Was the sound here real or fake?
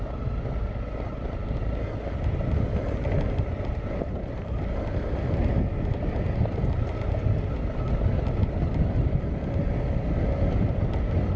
real